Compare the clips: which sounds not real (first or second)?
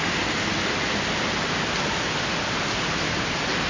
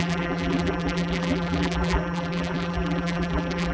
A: second